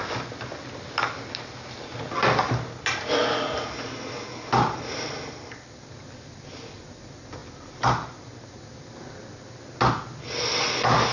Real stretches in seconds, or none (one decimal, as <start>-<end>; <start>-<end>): 0.0-11.1